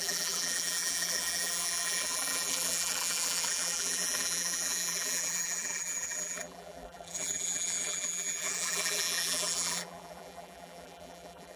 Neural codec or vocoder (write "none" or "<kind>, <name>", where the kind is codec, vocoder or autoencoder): vocoder, BigVGAN v2